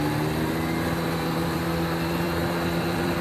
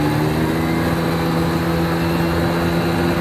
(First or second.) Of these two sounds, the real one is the second